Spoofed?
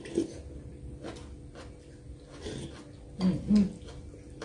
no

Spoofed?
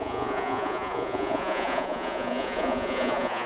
yes